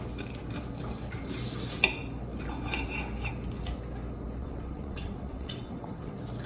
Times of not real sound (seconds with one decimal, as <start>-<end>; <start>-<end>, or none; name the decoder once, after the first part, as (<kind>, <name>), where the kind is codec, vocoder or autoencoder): 4.4-6.1 (vocoder, WaveNeXt)